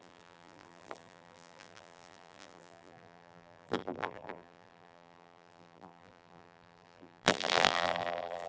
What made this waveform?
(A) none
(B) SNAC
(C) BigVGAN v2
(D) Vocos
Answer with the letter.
C